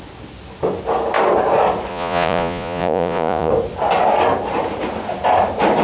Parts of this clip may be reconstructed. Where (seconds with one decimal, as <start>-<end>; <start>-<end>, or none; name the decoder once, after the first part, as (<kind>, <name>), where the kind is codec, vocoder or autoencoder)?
1.9-3.5 (vocoder, Vocos)